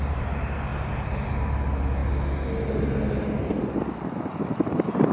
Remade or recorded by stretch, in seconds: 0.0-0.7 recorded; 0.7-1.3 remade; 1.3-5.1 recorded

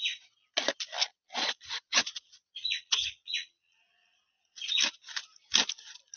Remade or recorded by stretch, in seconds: 0.0-1.1 recorded; 1.1-4.8 remade; 4.8-6.2 recorded

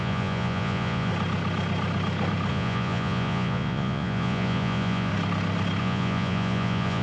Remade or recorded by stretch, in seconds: 0.0-1.1 remade; 1.1-2.5 recorded; 2.5-5.1 remade; 5.1-5.8 recorded; 5.8-7.0 remade